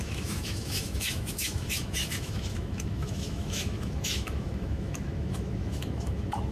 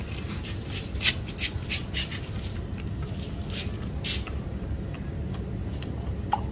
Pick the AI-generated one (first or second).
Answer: first